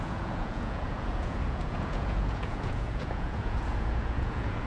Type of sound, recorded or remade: remade